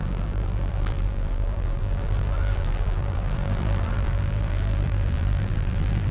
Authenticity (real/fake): fake